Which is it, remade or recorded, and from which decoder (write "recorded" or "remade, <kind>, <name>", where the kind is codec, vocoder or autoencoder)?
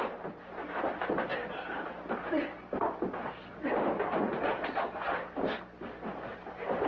recorded